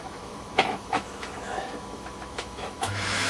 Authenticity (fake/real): fake